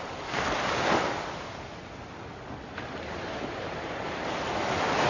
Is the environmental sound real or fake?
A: real